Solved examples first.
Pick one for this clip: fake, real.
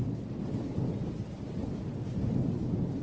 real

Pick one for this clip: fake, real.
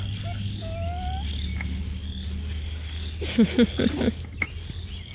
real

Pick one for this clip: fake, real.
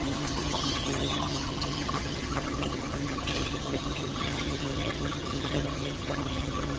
fake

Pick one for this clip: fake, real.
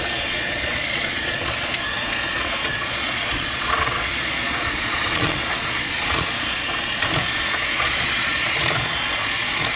fake